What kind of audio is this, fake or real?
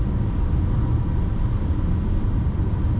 real